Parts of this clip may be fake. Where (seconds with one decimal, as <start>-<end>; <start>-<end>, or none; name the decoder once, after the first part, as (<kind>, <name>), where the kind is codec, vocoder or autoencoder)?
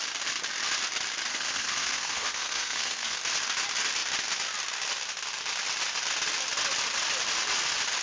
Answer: 1.3-3.2 (codec, SNAC)